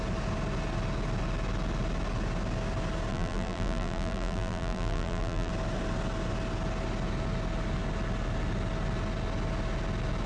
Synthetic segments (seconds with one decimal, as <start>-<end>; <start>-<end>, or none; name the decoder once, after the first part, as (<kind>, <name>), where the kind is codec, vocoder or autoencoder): 3.1-5.5 (vocoder, BigVGAN v2)